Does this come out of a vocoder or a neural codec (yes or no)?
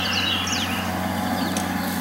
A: no